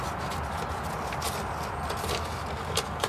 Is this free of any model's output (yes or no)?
yes